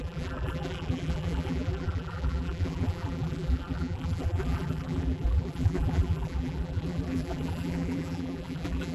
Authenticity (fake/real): fake